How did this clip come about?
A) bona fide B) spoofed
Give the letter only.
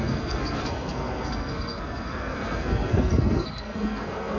B